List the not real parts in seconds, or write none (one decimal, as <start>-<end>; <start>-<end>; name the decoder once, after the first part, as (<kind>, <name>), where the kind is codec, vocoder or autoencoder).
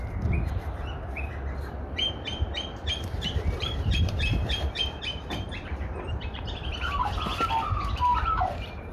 2.3-6.4 (vocoder, BigVGAN v2); 8.1-8.9